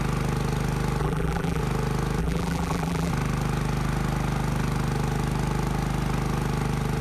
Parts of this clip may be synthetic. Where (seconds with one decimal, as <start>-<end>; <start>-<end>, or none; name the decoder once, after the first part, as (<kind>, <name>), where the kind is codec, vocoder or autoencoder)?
1.0-1.6 (vocoder, BigVGAN v2); 2.2-3.1